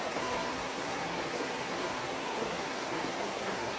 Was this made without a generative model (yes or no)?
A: no